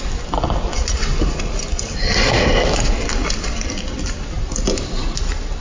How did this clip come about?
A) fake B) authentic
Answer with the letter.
B